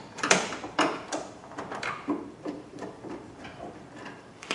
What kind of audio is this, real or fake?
fake